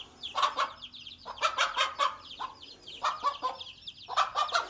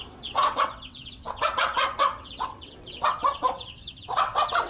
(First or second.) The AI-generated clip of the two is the second